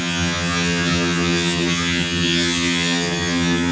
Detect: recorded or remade remade